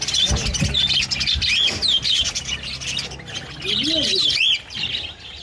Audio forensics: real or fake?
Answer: real